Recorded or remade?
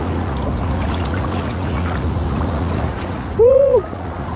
remade